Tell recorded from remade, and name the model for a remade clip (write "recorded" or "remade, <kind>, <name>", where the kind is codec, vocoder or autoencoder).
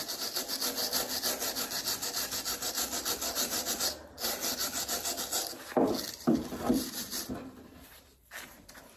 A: recorded